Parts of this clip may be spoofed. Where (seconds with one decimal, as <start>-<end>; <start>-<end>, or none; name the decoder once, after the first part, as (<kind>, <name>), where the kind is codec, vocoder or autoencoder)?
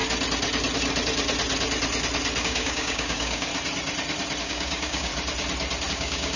2.4-3.5 (codec, DAC); 4.4-5.1; 5.9-6.4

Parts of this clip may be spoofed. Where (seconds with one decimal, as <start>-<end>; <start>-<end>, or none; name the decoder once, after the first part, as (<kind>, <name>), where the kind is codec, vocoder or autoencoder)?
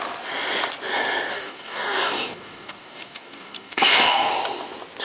1.3-4.3 (codec, DAC)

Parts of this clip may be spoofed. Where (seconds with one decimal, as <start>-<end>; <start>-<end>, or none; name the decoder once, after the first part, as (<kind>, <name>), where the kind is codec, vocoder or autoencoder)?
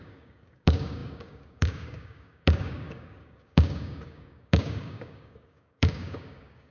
0.0-6.7 (codec, DAC)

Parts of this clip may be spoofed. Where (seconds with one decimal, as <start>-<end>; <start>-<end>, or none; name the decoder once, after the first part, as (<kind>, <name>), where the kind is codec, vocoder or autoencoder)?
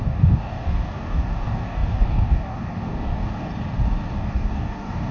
0.0-3.5 (codec, DAC); 4.1-5.1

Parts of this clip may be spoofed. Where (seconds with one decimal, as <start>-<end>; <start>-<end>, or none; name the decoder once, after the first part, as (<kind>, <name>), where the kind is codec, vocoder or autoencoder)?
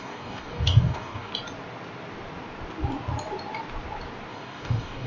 0.0-1.3 (codec, DAC); 4.3-5.1